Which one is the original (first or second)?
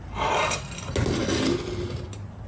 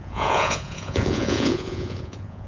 first